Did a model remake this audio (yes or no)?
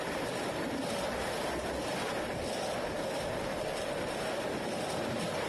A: no